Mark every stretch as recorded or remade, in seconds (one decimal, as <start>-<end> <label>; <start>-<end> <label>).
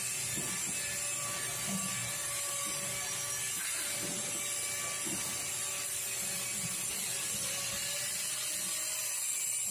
0.0-2.0 recorded; 2.0-2.9 remade; 2.9-9.7 recorded